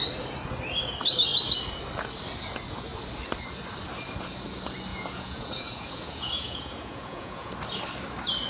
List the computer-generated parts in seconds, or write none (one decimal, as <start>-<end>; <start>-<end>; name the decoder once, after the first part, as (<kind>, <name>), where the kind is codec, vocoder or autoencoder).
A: 4.9-7.5 (vocoder, Vocos)